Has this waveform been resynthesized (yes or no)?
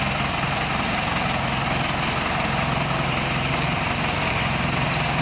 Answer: no